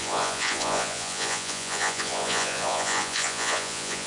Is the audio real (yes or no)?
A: no